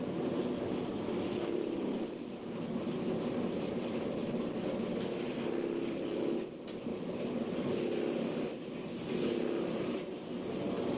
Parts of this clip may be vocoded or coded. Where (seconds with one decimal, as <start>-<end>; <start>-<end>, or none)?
none